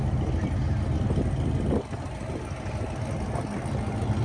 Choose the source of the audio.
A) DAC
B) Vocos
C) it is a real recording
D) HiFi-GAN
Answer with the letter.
C